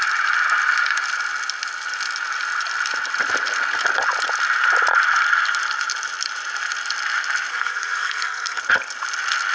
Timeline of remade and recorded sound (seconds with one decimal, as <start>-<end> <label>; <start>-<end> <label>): 0.0-7.5 recorded; 7.5-8.6 remade; 8.6-9.5 recorded